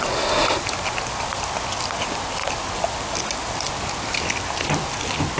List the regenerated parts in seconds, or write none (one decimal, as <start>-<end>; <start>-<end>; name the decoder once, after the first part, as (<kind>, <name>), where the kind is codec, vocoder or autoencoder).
none